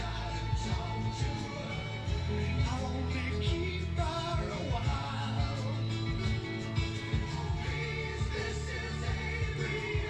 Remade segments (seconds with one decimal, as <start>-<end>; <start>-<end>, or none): none